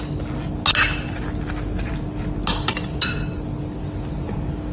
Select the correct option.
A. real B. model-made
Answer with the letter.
A